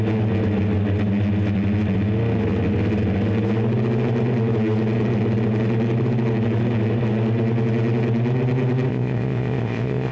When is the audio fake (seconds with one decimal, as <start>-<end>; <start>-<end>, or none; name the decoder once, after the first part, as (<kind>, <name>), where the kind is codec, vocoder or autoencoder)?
8.9-10.1 (vocoder, Vocos)